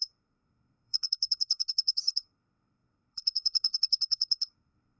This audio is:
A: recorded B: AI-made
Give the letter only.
B